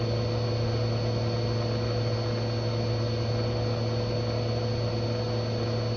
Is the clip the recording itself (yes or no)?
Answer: yes